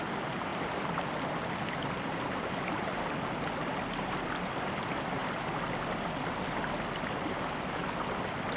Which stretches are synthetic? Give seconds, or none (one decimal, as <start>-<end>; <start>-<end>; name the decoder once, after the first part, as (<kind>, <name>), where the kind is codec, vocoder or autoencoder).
none